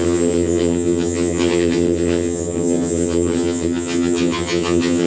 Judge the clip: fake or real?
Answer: fake